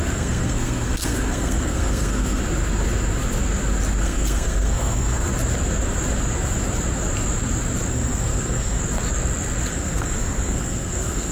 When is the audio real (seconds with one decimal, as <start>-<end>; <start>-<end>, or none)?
2.4-4.0; 5.3-7.9; 8.8-9.7